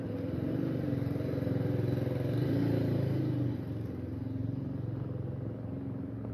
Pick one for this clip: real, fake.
real